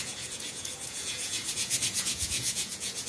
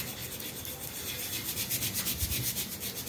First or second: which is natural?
second